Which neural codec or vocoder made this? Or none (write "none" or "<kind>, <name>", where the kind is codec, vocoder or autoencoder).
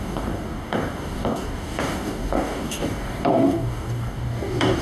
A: codec, DAC